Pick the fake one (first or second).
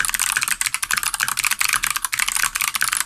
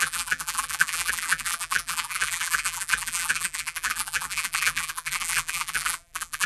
second